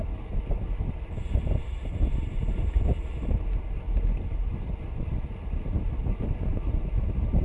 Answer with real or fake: real